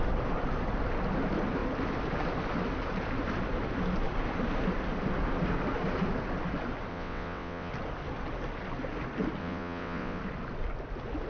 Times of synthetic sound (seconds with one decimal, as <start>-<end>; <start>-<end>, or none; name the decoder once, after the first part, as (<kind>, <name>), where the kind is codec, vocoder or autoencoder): 6.9-7.7 (vocoder, WaveNeXt); 9.4-10.2